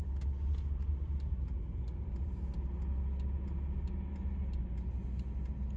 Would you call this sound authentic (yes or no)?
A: yes